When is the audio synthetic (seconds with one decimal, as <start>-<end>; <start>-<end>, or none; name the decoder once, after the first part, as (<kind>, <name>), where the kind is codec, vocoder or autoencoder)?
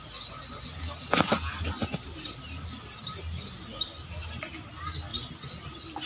none